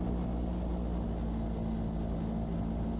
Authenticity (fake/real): real